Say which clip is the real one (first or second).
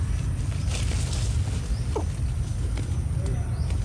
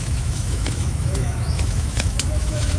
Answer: first